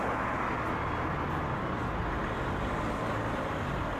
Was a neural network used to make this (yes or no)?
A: no